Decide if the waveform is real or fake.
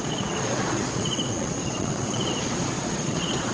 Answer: fake